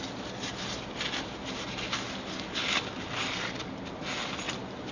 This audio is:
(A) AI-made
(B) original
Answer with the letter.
B